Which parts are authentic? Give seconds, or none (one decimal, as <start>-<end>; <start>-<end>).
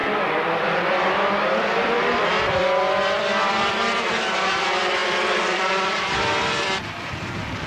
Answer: none